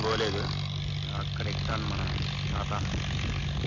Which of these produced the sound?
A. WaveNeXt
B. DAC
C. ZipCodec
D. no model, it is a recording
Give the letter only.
D